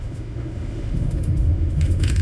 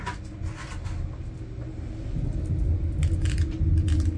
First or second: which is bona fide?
second